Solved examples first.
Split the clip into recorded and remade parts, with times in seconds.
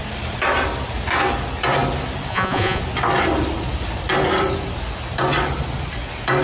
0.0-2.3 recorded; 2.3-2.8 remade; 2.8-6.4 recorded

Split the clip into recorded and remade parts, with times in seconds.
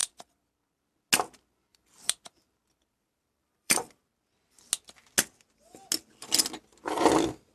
0.0-0.8 remade; 0.8-1.7 recorded; 1.7-4.0 remade; 4.0-7.5 recorded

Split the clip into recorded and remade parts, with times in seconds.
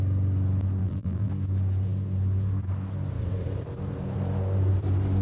0.0-0.8 recorded; 0.8-1.3 remade; 1.3-5.2 recorded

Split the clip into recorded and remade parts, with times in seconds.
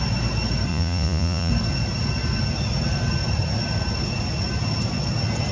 0.0-0.7 recorded; 0.7-1.5 remade; 1.5-5.5 recorded